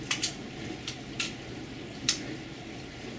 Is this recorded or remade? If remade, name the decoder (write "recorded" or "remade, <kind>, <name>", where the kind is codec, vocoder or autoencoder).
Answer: remade, vocoder, BigVGAN v2